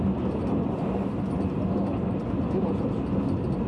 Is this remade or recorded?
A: recorded